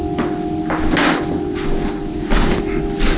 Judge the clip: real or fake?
real